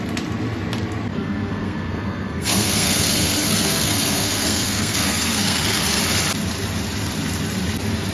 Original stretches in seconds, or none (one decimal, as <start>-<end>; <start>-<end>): 0.0-1.1; 6.0-8.1